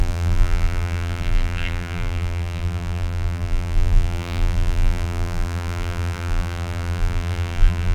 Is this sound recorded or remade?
remade